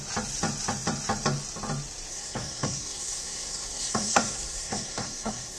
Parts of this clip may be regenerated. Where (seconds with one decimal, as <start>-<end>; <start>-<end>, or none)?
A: 2.1-5.6